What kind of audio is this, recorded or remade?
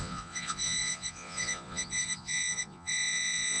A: remade